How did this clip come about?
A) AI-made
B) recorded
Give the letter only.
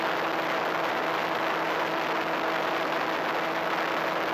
B